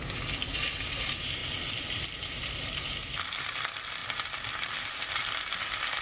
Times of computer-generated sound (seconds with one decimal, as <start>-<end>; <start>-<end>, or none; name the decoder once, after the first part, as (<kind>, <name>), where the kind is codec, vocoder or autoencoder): none